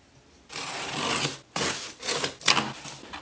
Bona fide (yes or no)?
yes